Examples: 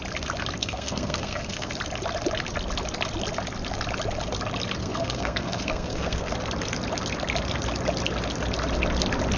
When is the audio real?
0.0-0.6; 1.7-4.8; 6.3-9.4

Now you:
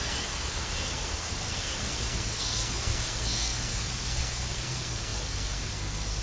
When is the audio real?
none

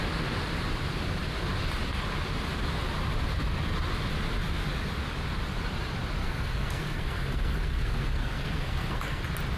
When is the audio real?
0.0-6.2; 9.2-9.6

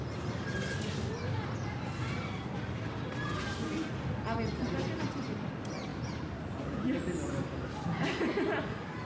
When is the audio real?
0.0-9.0

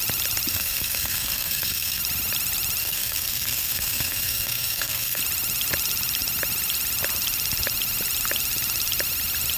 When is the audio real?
0.0-0.5; 2.0-2.8; 5.2-9.6

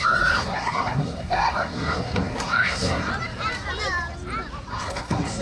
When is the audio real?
3.1-4.7